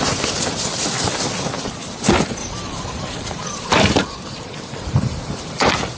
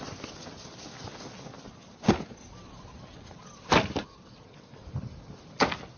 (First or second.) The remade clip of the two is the first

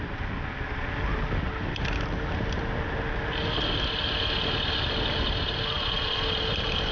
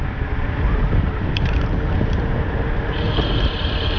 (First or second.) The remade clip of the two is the second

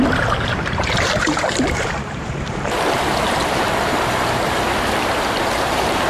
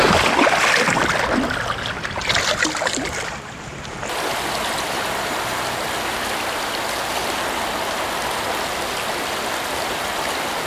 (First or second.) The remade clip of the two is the first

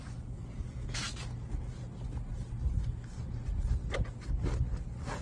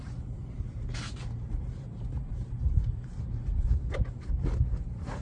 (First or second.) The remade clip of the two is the second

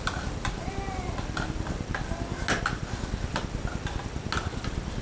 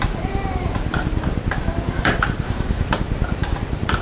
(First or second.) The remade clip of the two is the second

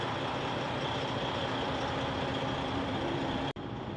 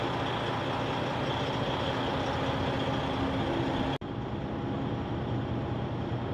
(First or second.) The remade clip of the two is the first